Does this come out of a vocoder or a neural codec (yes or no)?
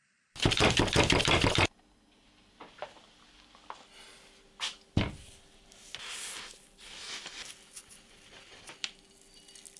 no